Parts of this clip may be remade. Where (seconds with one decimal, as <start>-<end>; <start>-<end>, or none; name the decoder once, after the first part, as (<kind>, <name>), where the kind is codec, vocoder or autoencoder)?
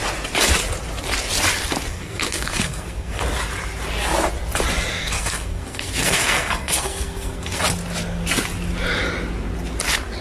1.9-3.2 (codec, SNAC); 4.9-7.6